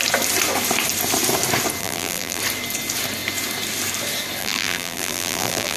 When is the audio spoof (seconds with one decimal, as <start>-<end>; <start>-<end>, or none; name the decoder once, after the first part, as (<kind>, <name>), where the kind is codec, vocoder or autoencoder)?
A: 1.8-2.4 (vocoder, BigVGAN v2); 4.4-5.8

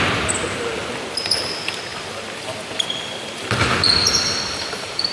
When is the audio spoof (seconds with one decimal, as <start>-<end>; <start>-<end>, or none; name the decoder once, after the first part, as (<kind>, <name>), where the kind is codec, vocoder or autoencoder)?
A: 1.9-5.1 (vocoder, BigVGAN v2)

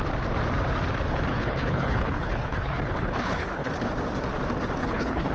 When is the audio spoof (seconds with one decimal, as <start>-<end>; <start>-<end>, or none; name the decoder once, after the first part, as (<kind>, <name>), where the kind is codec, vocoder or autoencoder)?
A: 1.3-3.7 (codec, HILCodec); 4.8-5.3